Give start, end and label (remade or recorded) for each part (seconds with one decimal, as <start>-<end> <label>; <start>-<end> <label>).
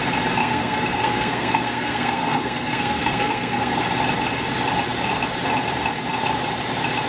0.0-0.4 recorded; 0.4-3.7 remade; 3.7-7.1 recorded